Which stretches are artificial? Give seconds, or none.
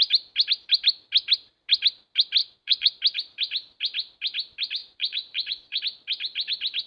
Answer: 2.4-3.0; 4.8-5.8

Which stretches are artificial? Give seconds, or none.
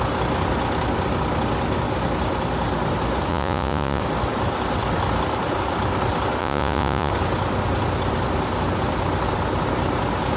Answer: 3.3-4.0; 6.4-7.1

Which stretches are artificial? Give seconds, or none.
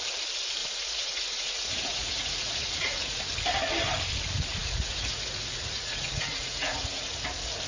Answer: 0.6-3.2; 4.6-7.2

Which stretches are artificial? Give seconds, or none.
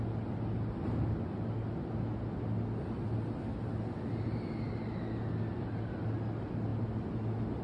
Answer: none